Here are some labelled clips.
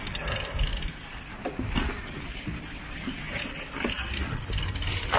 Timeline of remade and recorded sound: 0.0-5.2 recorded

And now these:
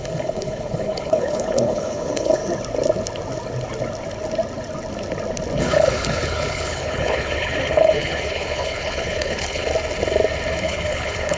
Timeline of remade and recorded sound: 0.0-2.4 remade; 2.4-5.6 recorded; 5.6-9.6 remade; 9.6-10.6 recorded; 10.6-11.4 remade

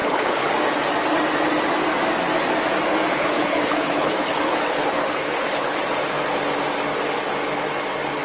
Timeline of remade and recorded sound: 0.0-0.5 remade; 0.5-3.1 recorded; 3.1-5.8 remade; 5.8-8.2 recorded